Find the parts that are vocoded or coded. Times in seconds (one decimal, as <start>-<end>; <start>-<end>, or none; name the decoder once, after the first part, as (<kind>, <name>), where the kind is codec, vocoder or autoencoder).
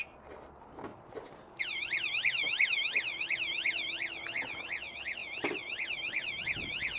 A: 0.9-2.1 (vocoder, BigVGAN v2); 5.2-6.4